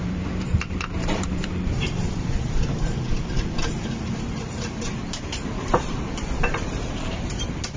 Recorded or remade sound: remade